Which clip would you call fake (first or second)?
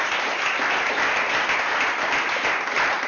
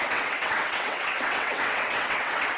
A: second